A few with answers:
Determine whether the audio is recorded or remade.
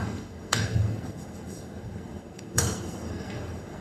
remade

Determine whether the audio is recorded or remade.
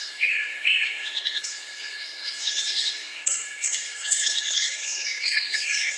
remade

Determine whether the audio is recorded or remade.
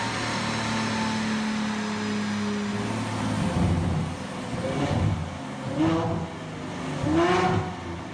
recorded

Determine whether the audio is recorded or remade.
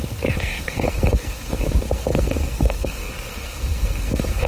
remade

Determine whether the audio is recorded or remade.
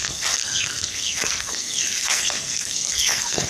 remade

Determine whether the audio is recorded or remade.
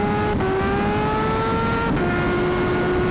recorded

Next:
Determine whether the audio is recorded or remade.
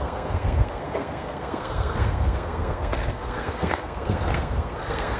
remade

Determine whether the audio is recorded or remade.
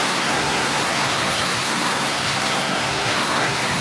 remade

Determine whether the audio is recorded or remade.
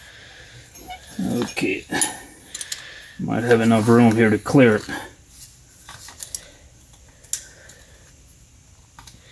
recorded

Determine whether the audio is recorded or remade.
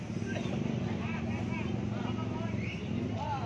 recorded